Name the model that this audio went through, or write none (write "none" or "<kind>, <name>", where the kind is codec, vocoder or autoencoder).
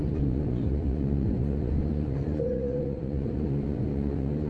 vocoder, Vocos